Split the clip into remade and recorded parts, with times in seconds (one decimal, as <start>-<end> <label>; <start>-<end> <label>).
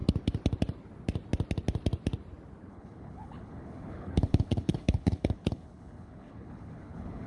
0.0-2.7 recorded; 2.7-7.3 remade